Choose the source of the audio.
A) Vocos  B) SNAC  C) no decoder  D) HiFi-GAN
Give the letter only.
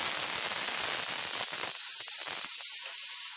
C